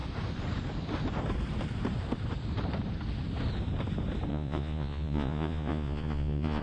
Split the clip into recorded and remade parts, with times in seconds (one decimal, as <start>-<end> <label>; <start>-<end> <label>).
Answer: 0.0-4.3 recorded; 4.3-6.6 remade